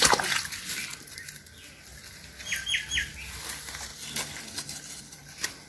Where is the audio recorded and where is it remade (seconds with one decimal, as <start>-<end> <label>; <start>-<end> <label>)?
0.0-5.7 recorded